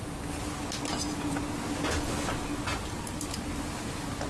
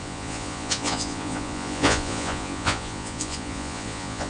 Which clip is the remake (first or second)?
second